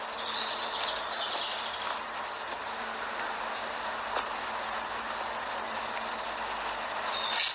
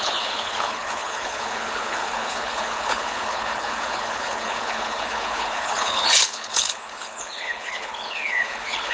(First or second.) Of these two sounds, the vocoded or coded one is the second